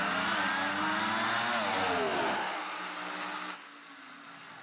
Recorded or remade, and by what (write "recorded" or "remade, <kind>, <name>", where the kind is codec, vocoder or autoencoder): recorded